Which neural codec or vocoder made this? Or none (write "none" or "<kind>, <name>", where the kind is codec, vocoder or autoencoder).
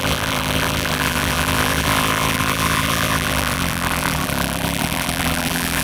vocoder, BigVGAN v2